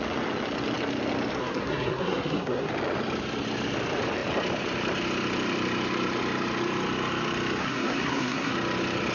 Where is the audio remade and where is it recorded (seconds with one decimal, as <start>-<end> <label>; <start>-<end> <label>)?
0.0-1.4 recorded; 1.4-2.7 remade; 2.7-7.6 recorded; 7.6-8.5 remade; 8.5-9.1 recorded